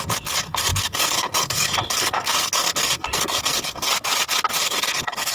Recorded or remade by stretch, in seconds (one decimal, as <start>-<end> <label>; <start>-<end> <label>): 0.0-3.9 remade; 3.9-4.6 recorded; 4.6-5.3 remade